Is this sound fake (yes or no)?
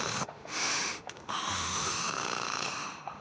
yes